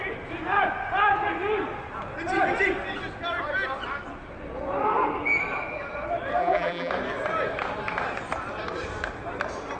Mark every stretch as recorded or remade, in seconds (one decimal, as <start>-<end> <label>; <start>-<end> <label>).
0.0-6.4 recorded; 6.4-6.9 remade; 6.9-9.8 recorded